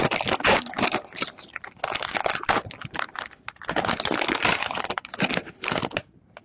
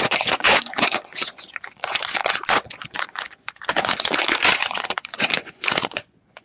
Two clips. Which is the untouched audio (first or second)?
first